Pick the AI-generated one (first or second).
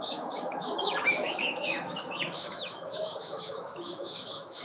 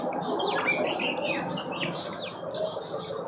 first